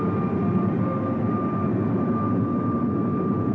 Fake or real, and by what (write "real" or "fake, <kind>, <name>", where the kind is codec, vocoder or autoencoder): real